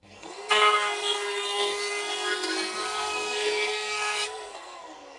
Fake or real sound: fake